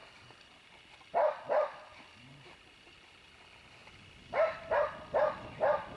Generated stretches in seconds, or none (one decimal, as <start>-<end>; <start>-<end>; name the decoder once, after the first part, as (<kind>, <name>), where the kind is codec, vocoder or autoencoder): none